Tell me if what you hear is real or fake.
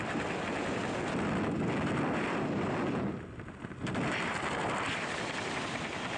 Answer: real